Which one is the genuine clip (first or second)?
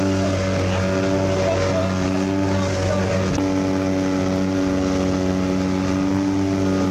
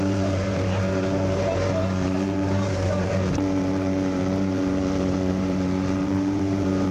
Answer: first